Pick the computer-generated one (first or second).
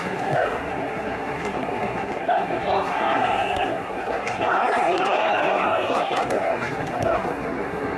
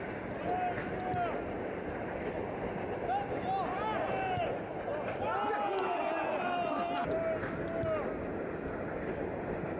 first